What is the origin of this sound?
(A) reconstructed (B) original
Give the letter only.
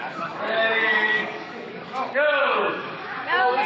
A